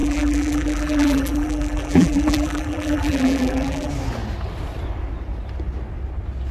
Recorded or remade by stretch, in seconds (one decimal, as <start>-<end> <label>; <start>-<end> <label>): 0.0-3.9 remade; 3.9-6.5 recorded

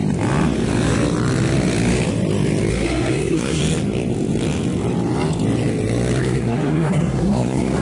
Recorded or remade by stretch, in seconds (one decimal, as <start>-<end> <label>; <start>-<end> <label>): 0.0-2.7 recorded; 2.7-3.6 remade; 3.6-6.2 recorded; 6.2-7.8 remade